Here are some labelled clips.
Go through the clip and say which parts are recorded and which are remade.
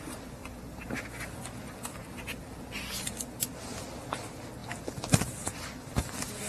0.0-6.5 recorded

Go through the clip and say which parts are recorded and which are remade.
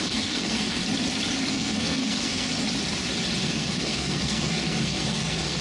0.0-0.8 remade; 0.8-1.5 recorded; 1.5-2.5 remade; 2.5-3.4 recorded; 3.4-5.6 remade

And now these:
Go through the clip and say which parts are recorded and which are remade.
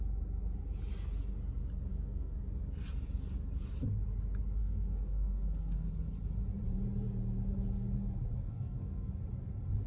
0.0-1.9 recorded; 1.9-2.4 remade; 2.4-4.6 recorded; 4.6-5.9 remade; 5.9-8.4 recorded; 8.4-9.1 remade; 9.1-9.9 recorded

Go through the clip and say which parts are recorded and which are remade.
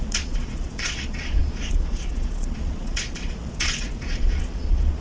0.0-5.0 remade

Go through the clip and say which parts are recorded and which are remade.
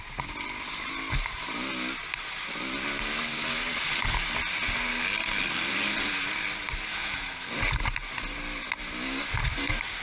0.0-6.9 recorded; 6.9-7.5 remade; 7.5-10.0 recorded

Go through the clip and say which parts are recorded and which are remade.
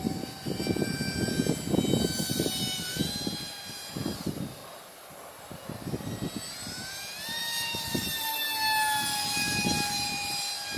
0.0-6.8 remade; 6.8-7.4 recorded; 7.4-8.4 remade; 8.4-9.9 recorded; 9.9-10.8 remade